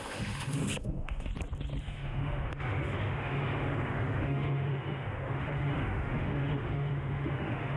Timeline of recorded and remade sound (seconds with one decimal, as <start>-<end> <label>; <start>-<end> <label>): 0.0-1.3 remade; 1.3-1.8 recorded; 1.8-7.8 remade